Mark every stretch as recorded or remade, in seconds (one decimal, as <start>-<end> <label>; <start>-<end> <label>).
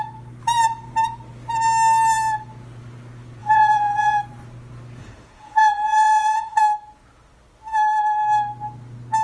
0.0-3.4 recorded; 3.4-4.2 remade; 4.2-5.0 recorded; 5.0-6.6 remade; 6.6-9.2 recorded